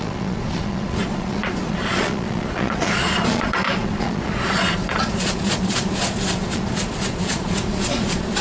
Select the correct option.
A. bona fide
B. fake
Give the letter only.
B